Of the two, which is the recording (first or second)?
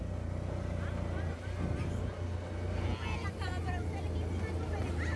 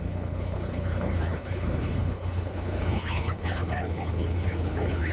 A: first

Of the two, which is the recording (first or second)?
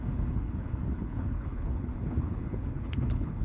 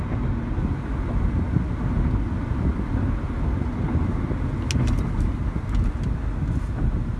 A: second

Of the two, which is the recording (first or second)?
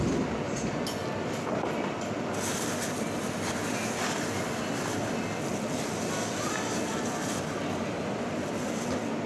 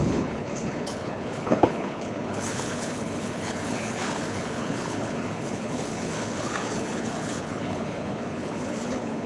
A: first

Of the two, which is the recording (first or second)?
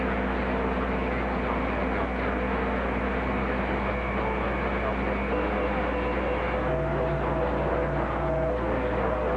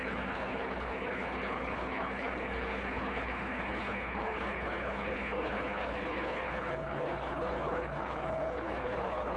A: first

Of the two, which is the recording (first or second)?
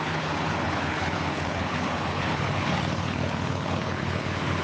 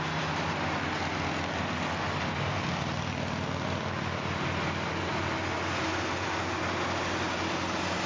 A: second